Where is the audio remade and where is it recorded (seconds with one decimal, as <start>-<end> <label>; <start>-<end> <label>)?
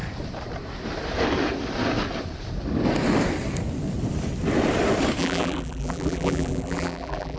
0.0-5.2 recorded; 5.2-7.4 remade